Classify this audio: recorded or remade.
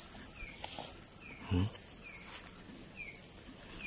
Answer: recorded